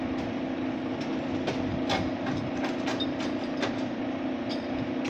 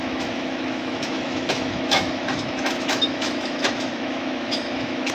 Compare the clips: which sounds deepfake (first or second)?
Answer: second